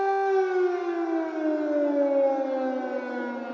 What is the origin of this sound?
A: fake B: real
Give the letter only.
B